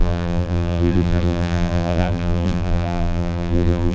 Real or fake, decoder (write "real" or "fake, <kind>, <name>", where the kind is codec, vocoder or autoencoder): fake, vocoder, BigVGAN v2